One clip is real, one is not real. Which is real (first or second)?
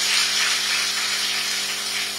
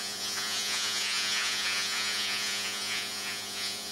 first